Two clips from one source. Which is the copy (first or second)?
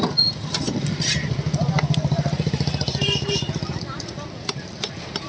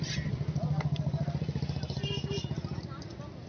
first